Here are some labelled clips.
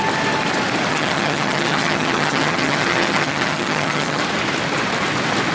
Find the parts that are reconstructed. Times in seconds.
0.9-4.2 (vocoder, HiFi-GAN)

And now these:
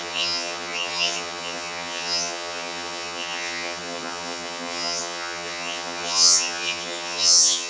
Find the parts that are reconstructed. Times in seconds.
0.0-7.7 (vocoder, HiFi-GAN)

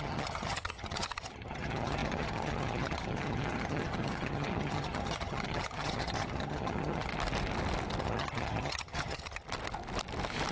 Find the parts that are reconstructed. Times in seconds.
0.0-7.1 (vocoder, HiFi-GAN); 8.0-9.4

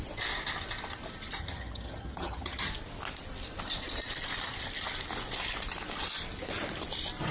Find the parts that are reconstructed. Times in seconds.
1.4-2.7 (vocoder, HiFi-GAN)

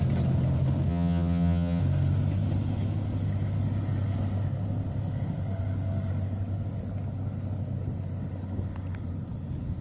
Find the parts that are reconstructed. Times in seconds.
0.9-1.8 (vocoder, HiFi-GAN)